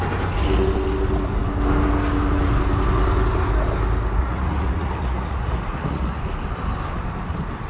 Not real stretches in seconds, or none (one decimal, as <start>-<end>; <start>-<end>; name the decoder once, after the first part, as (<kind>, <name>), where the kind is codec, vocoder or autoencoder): 4.2-6.2 (vocoder, Vocos)